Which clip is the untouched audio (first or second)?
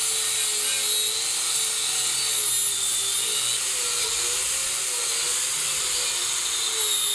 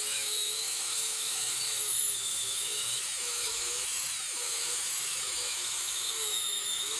first